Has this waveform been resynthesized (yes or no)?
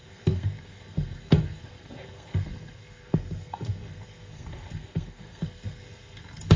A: yes